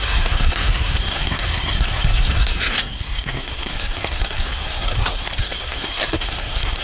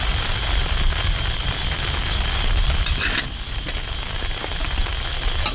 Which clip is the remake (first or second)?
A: first